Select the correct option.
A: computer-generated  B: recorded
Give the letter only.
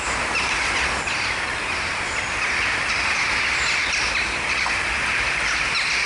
B